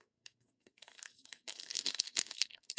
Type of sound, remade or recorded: remade